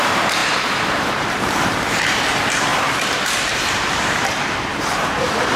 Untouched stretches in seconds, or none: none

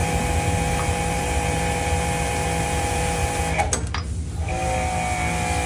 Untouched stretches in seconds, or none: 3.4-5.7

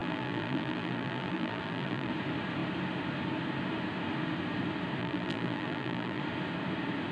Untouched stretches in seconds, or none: 2.1-5.0; 6.2-7.1

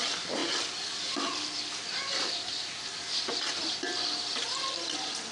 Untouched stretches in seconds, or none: 0.0-5.3